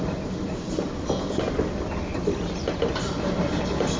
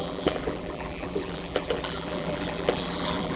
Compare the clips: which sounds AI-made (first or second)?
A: second